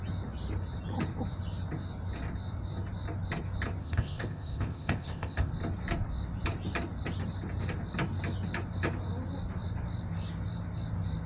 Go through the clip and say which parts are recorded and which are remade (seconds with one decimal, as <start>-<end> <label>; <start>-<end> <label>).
0.0-3.8 recorded; 3.8-5.5 remade; 5.5-11.3 recorded